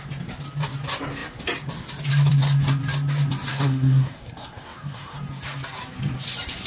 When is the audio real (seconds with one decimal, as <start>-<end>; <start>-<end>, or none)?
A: 0.0-3.5; 5.2-6.7